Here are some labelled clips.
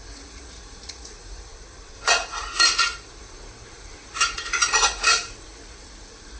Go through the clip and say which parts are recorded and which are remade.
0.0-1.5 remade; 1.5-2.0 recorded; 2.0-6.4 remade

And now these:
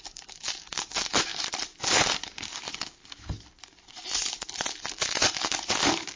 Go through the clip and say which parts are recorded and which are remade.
0.0-1.3 remade; 1.3-1.9 recorded; 1.9-3.0 remade; 3.0-4.8 recorded; 4.8-6.2 remade

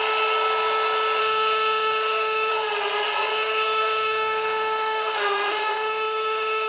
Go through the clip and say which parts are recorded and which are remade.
0.0-1.2 recorded; 1.2-2.5 remade; 2.5-3.3 recorded; 3.3-6.7 remade

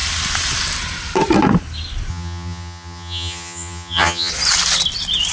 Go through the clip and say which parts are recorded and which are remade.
0.0-2.1 recorded; 2.1-4.3 remade; 4.3-5.3 recorded

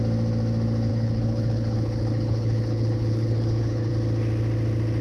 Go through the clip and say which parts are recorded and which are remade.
0.0-0.9 recorded; 0.9-3.9 remade; 3.9-5.0 recorded

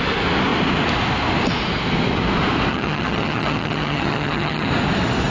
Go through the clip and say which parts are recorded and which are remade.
0.0-2.7 recorded; 2.7-4.7 remade; 4.7-5.3 recorded

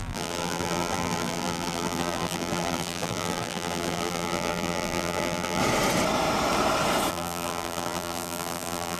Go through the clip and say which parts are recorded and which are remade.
0.0-5.6 remade; 5.6-7.1 recorded; 7.1-9.0 remade